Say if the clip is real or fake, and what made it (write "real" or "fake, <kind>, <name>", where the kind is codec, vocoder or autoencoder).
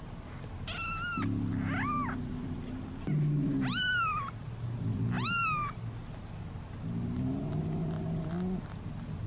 real